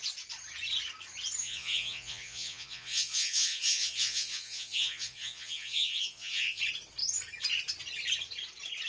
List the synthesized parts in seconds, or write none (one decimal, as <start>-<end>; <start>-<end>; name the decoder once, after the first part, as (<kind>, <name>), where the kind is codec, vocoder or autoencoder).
1.4-6.6 (vocoder, Vocos)